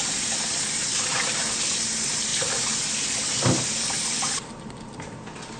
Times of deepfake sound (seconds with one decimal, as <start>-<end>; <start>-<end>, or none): none